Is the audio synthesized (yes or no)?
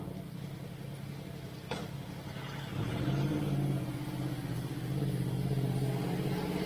no